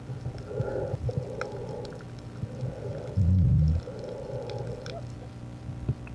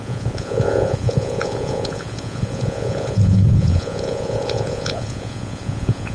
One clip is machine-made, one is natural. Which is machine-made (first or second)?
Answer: second